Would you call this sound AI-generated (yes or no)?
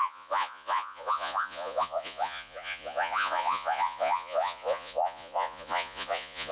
yes